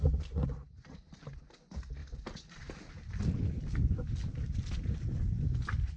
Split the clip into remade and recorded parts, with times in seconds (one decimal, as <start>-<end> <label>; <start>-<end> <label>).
0.0-2.0 recorded; 2.0-3.2 remade; 3.2-6.0 recorded